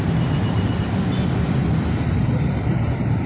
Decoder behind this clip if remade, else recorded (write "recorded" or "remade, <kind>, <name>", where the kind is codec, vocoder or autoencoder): remade, vocoder, BigVGAN v2